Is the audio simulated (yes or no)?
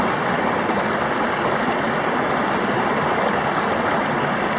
no